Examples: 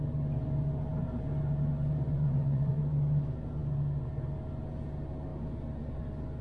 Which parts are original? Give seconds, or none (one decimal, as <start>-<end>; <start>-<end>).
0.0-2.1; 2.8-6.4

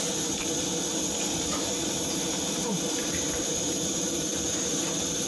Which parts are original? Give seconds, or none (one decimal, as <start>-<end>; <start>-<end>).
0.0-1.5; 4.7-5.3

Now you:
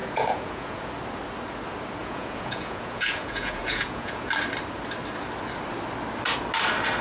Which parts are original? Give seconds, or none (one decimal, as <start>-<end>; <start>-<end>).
0.9-2.0; 4.3-7.0

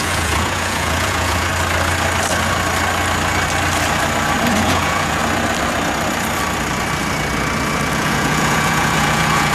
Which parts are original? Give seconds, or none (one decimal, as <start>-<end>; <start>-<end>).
1.5-4.6; 5.2-7.9